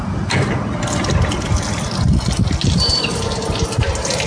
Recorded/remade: recorded